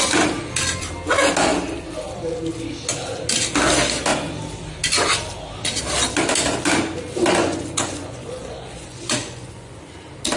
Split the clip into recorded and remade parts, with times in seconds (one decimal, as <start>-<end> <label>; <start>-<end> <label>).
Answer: 0.0-7.4 recorded; 7.4-9.9 remade; 9.9-10.4 recorded